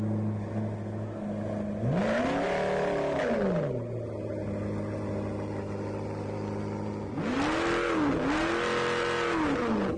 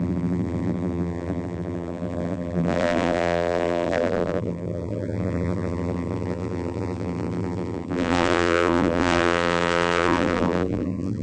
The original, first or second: first